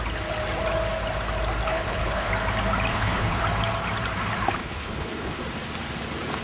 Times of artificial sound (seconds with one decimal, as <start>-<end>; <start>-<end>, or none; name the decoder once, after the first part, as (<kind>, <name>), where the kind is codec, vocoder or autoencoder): 1.7-2.3 (codec, HILCodec); 2.9-3.4; 4.6-5.4